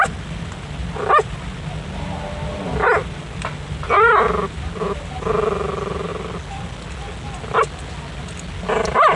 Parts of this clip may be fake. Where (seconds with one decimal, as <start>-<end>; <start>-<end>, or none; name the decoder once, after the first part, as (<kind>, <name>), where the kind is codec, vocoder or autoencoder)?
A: 0.0-6.1 (vocoder, BigVGAN v2); 8.1-9.2